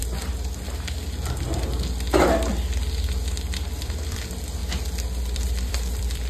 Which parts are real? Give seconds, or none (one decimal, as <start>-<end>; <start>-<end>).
0.0-3.8; 4.6-5.2